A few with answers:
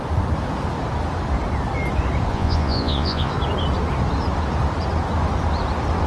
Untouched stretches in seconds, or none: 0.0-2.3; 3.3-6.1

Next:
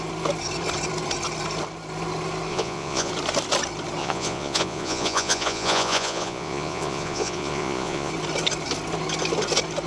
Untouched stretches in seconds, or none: 0.0-2.5; 3.1-4.0; 8.1-9.9

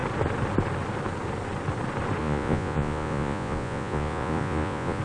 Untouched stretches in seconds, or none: 0.0-2.2

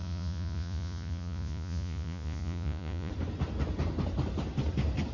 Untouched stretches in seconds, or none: 3.1-5.1

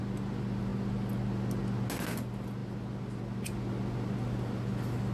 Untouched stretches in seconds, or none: 0.0-5.1